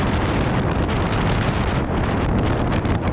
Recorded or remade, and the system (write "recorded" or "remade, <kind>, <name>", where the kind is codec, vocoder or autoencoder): remade, vocoder, BigVGAN v2